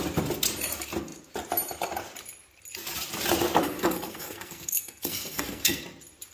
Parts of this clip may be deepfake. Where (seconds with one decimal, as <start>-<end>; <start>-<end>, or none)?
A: 3.6-5.8